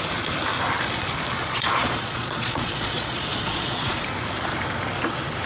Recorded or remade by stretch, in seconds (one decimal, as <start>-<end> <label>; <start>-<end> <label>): 0.0-1.4 recorded; 1.4-3.9 remade; 3.9-5.5 recorded